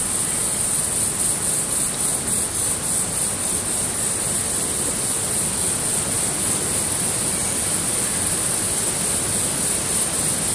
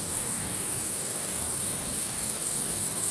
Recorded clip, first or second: first